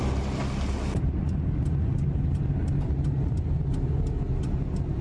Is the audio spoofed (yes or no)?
no